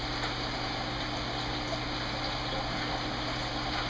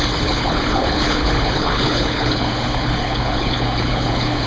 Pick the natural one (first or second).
first